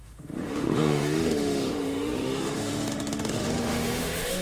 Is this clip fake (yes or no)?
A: yes